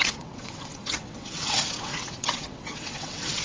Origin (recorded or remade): remade